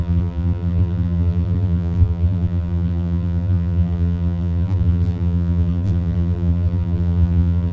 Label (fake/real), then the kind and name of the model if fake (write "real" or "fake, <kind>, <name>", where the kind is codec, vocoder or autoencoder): fake, vocoder, BigVGAN v2